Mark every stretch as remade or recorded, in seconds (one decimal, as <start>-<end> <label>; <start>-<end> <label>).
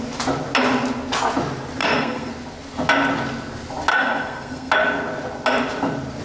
0.0-1.8 recorded; 1.8-2.3 remade; 2.3-3.9 recorded; 3.9-4.7 remade; 4.7-6.2 recorded